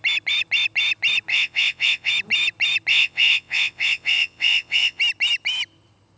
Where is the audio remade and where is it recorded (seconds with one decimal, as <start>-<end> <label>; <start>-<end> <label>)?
0.0-1.3 recorded; 1.3-2.1 remade; 2.1-2.9 recorded; 2.9-5.0 remade; 5.0-6.2 recorded